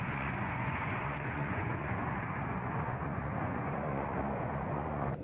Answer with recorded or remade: remade